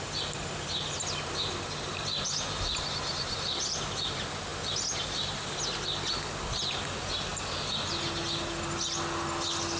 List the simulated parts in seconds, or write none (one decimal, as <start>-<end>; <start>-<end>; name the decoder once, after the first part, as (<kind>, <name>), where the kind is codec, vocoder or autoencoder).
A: none